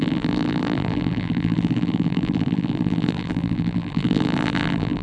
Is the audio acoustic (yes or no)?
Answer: no